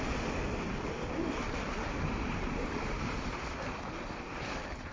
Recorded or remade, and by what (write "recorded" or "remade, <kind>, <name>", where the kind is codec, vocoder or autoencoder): recorded